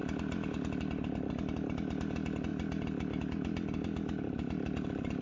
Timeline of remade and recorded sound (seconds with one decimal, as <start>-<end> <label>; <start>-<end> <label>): 0.0-2.5 recorded; 2.5-5.2 remade